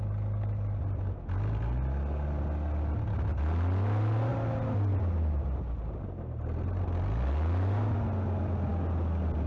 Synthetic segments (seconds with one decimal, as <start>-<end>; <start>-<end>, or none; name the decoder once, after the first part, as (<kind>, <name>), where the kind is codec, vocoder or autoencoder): none